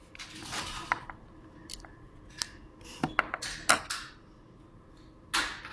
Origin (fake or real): real